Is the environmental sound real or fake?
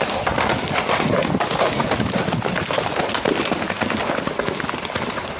real